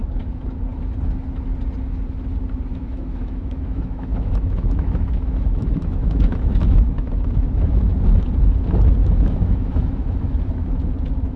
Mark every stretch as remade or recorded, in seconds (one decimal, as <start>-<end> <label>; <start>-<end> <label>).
0.0-2.7 recorded; 2.7-7.9 remade; 7.9-9.0 recorded; 9.0-10.5 remade; 10.5-11.4 recorded